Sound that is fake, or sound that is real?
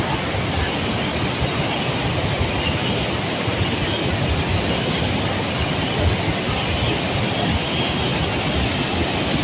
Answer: real